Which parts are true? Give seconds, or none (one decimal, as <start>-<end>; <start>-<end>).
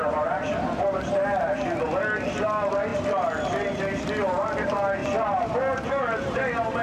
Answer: 0.0-6.8